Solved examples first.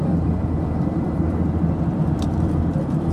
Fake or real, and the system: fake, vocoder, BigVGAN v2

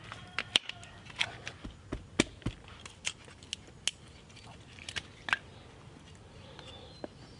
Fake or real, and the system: real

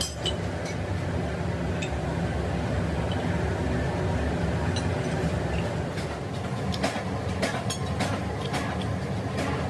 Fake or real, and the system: real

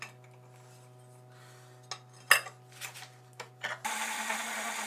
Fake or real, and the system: real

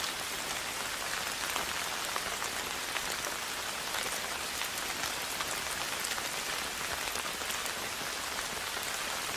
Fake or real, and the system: real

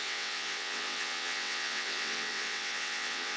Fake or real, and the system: fake, vocoder, WaveNeXt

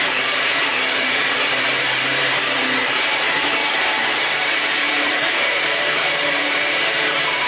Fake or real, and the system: fake, vocoder, BigVGAN v2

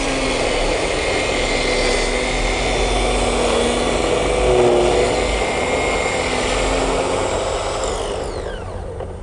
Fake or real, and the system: real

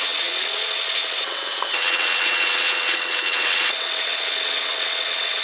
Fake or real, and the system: fake, vocoder, WaveNeXt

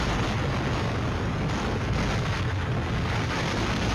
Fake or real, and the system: real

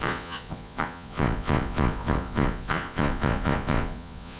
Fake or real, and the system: fake, vocoder, Vocos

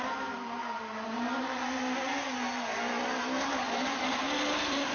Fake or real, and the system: real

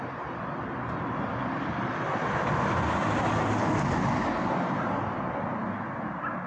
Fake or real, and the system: real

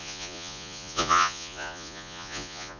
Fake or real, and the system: fake, vocoder, Vocos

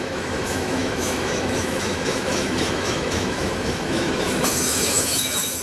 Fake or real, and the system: fake, autoencoder, DAC-VAE